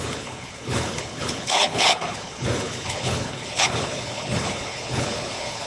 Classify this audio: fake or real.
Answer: fake